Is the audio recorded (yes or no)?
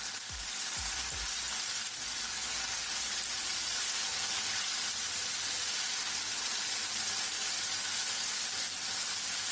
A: yes